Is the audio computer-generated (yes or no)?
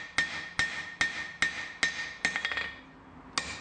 no